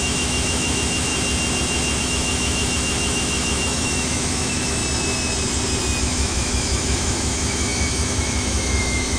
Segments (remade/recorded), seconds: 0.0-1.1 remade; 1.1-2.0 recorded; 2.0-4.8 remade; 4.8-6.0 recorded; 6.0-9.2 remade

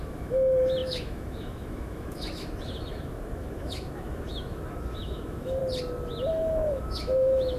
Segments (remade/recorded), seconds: 0.0-5.6 remade; 5.6-6.3 recorded; 6.3-7.6 remade

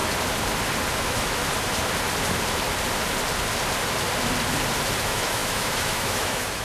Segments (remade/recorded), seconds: 0.0-0.9 recorded; 0.9-1.4 remade; 1.4-5.0 recorded; 5.0-6.6 remade

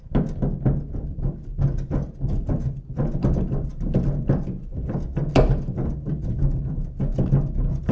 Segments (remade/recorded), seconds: 0.0-7.9 recorded

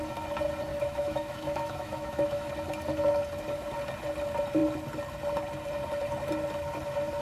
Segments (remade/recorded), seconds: 0.0-0.7 recorded; 0.7-2.5 remade; 2.5-7.2 recorded

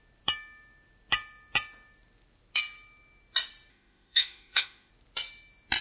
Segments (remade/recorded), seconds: 0.0-3.7 recorded; 3.7-4.9 remade; 4.9-5.8 recorded

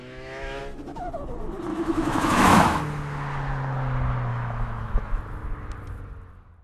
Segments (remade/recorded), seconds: 0.0-0.6 remade; 0.6-1.7 recorded; 1.7-2.8 remade; 2.8-4.3 recorded; 4.3-5.2 remade; 5.2-6.6 recorded

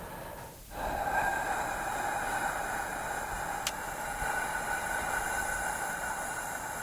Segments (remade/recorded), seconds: 0.0-6.8 recorded